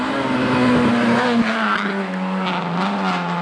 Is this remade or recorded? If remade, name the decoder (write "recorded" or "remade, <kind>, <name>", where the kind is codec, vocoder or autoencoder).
recorded